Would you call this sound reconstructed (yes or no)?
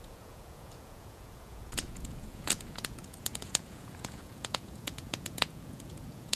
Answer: yes